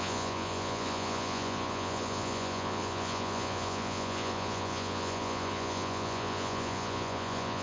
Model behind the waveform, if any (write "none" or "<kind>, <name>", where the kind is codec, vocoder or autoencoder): vocoder, Vocos